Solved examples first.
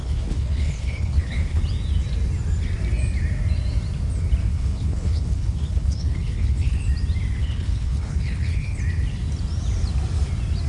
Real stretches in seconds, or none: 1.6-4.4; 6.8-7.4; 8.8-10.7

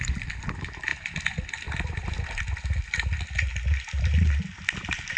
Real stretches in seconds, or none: 0.0-5.2